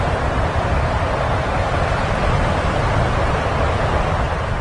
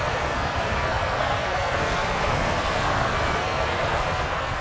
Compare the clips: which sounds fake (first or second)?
second